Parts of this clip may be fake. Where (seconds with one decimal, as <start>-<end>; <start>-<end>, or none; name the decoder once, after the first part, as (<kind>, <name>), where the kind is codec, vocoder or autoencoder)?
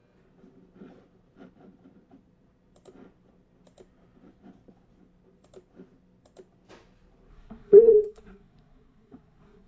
7.3-9.7 (codec, SNAC)